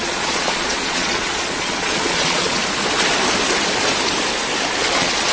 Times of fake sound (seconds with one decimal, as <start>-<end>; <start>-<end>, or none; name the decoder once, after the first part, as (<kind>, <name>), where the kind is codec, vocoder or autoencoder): 0.0-2.6 (vocoder, Vocos); 4.8-5.3